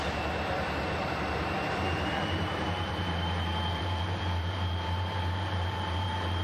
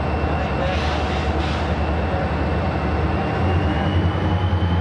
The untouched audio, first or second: second